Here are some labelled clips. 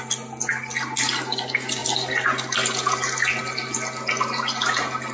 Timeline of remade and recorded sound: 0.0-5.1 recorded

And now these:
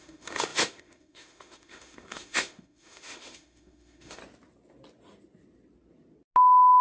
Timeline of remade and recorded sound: 0.0-4.2 remade; 4.2-6.8 recorded

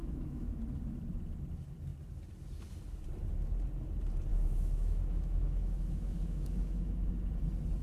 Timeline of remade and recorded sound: 0.0-0.6 remade; 0.6-4.3 recorded; 4.3-7.1 remade; 7.1-7.8 recorded

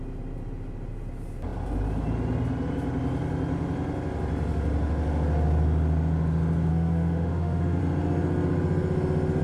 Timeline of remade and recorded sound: 0.0-6.7 recorded; 6.7-7.8 remade; 7.8-9.4 recorded

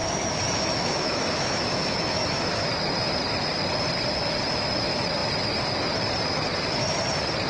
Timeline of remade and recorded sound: 0.0-2.6 remade; 2.6-7.5 recorded

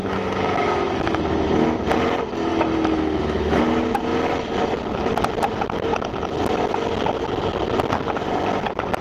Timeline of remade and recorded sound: 0.0-1.2 remade; 1.2-2.5 recorded; 2.5-3.6 remade; 3.6-9.0 recorded